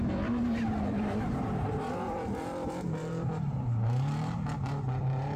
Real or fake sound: fake